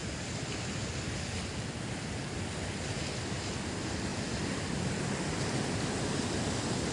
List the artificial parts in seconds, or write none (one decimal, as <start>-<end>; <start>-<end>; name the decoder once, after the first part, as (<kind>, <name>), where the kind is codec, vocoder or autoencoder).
none